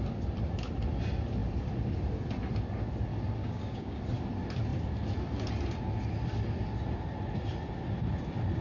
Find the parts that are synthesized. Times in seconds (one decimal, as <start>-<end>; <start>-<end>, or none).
3.4-4.0